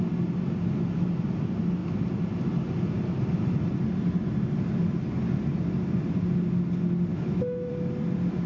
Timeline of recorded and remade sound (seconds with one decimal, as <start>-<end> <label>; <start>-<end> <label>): 0.0-7.1 recorded; 7.1-7.7 remade; 7.7-8.5 recorded